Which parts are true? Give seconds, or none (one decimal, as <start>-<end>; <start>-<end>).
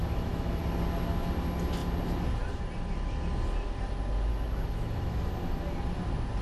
0.6-4.3; 5.3-6.4